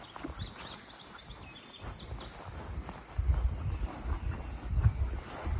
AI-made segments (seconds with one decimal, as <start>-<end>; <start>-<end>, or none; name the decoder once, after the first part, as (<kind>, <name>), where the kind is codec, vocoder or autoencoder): none